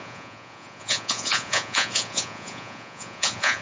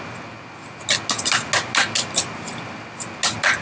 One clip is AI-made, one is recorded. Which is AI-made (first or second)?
first